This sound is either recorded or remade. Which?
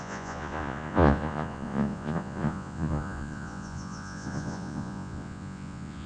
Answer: remade